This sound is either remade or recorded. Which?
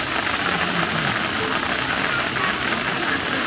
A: recorded